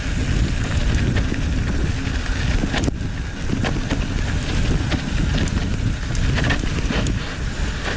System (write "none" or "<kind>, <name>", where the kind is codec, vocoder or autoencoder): none